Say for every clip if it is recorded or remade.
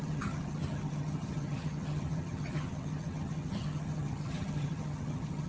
remade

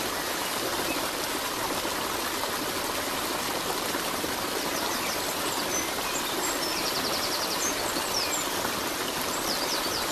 remade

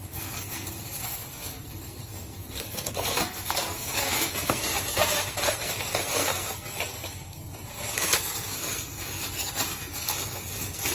remade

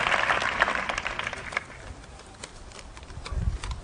recorded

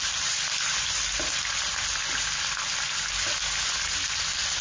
recorded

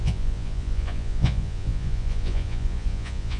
remade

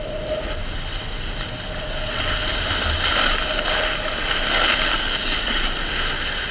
recorded